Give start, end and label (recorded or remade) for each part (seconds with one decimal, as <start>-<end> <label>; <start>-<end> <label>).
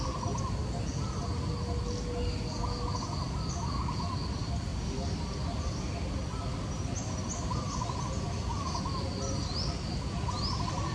0.0-10.9 recorded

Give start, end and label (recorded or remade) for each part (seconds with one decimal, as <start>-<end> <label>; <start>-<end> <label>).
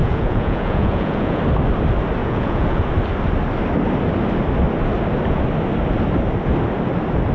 0.0-1.4 remade; 1.4-2.2 recorded; 2.2-2.8 remade; 2.8-7.3 recorded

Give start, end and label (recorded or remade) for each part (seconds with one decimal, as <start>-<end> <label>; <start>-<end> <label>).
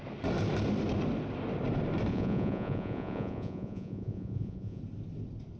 0.0-2.1 recorded; 2.1-4.8 remade; 4.8-5.6 recorded